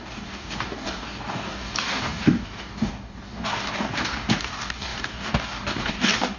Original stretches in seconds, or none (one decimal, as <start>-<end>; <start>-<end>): none